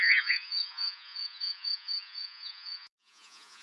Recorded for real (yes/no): no